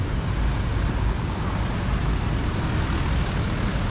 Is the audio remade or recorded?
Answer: recorded